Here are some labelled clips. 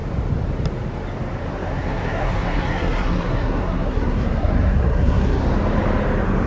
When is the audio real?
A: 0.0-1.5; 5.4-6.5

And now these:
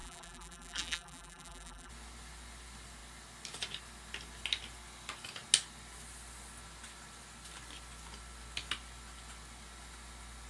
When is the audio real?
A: 1.9-10.5

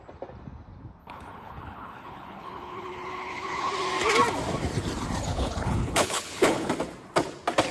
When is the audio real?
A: 0.0-1.0; 3.7-5.3; 6.7-7.7

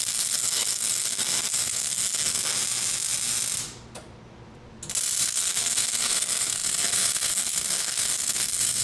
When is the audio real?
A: 2.5-5.2

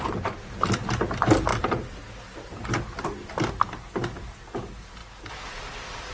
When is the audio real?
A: 0.0-6.1

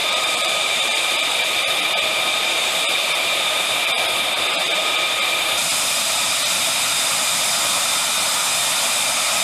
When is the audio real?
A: 1.0-9.4

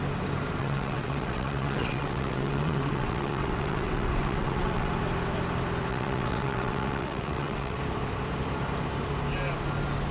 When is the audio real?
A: 0.0-0.6; 4.9-5.9; 7.8-10.1

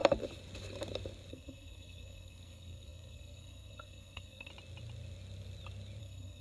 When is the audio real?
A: 0.0-1.3; 4.5-6.0